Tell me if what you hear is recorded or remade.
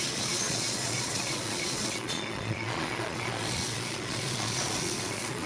remade